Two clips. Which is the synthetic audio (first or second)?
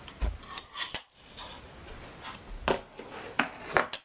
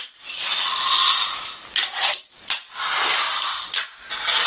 first